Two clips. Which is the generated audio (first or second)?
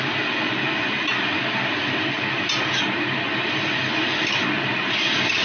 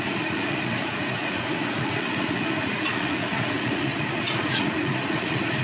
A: second